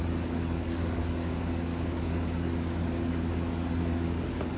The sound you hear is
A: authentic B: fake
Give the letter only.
B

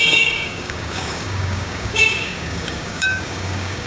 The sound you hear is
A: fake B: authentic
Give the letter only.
A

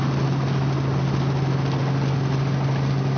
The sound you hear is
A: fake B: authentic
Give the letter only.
B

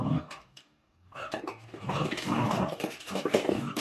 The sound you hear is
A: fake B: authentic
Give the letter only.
A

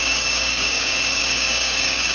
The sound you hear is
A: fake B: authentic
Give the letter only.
A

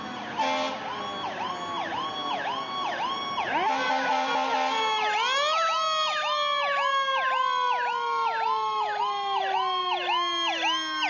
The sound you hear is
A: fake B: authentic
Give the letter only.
B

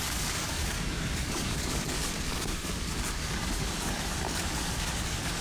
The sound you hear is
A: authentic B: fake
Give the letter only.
B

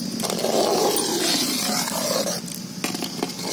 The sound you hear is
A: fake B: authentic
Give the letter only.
B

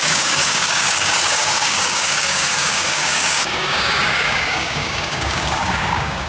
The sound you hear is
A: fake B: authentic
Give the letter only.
A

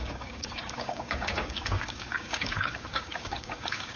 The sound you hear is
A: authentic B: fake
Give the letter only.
B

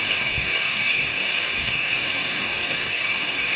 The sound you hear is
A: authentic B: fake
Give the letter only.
B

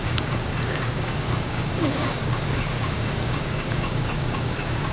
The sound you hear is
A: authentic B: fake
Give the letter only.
B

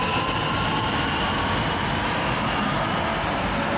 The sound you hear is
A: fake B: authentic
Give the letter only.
B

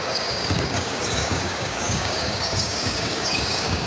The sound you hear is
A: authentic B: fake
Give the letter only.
B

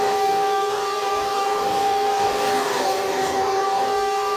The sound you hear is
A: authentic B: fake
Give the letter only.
B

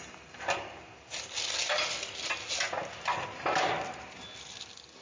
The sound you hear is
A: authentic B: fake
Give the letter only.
A